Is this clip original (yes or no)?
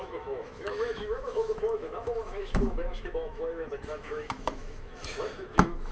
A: no